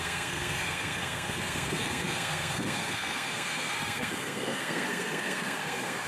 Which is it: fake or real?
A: fake